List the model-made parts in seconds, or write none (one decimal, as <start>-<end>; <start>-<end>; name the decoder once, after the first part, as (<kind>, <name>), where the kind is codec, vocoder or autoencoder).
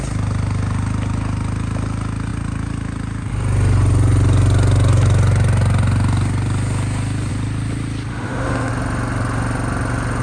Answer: 8.1-8.7 (autoencoder, DAC-VAE)